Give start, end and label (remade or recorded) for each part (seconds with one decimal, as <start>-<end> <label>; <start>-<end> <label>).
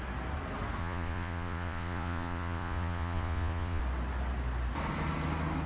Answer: 0.0-0.8 recorded; 0.8-3.8 remade; 3.8-5.7 recorded